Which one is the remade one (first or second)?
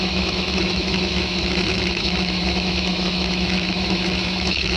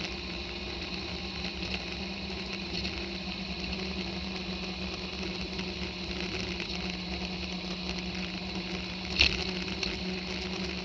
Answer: first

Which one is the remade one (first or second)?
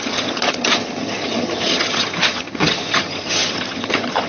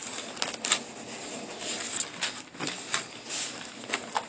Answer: first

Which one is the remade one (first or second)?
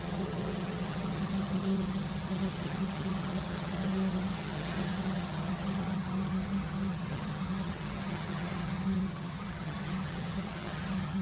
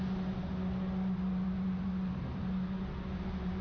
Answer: first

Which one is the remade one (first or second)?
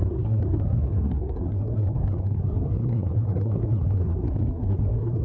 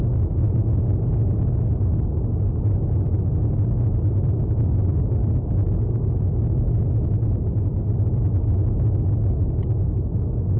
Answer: first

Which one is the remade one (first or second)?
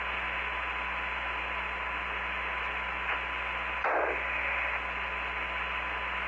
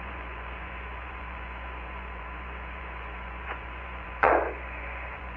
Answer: second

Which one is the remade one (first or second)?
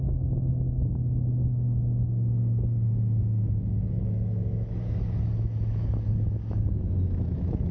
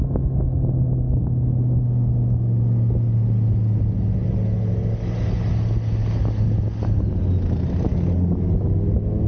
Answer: first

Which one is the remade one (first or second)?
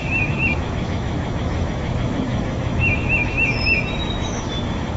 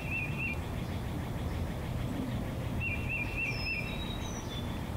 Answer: first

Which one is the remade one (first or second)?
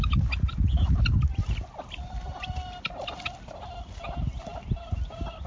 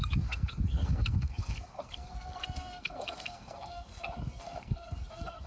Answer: second